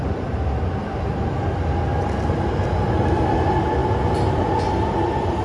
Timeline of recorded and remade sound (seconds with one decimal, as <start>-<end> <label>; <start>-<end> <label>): 0.0-5.4 recorded